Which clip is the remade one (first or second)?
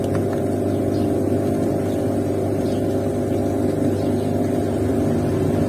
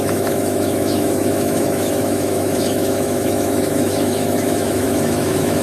second